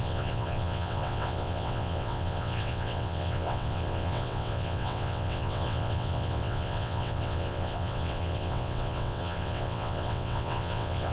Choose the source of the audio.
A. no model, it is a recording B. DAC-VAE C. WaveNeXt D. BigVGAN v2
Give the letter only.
C